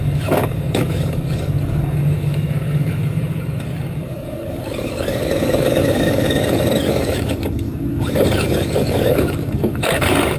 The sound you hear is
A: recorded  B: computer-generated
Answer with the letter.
B